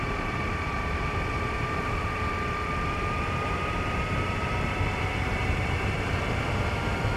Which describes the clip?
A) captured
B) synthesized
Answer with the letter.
B